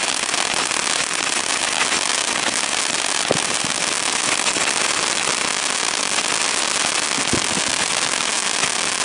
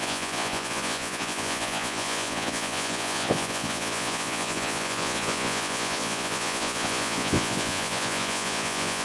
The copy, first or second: second